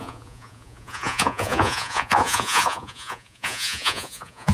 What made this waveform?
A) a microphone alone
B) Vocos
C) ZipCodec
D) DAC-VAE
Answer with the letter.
B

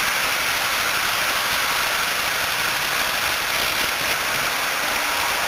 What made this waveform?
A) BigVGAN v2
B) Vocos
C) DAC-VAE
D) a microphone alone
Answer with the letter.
D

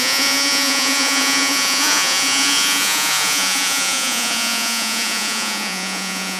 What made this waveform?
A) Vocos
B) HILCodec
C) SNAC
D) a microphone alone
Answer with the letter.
A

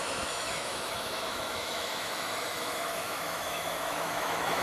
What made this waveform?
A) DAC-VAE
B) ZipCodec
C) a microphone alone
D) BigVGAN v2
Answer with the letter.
A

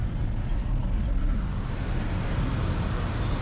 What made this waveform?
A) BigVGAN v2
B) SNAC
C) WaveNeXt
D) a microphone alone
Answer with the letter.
D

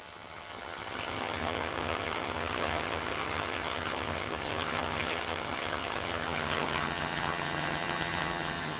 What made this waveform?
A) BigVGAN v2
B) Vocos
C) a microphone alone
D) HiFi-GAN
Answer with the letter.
D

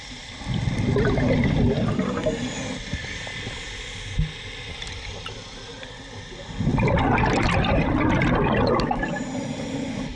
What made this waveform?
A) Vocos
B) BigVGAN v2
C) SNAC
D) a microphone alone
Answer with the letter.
D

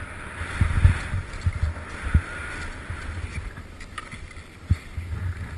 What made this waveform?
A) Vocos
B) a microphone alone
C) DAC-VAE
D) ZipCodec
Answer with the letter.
B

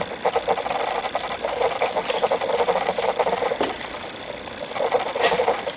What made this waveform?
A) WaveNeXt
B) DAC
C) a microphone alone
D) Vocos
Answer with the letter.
C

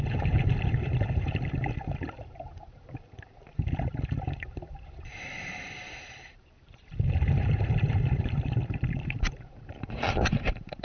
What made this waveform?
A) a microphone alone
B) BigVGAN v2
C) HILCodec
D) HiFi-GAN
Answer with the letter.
B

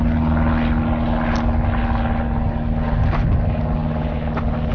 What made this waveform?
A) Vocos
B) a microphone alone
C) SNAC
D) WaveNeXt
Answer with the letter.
B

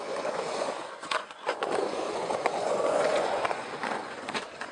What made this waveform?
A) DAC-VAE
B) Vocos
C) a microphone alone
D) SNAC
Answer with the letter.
B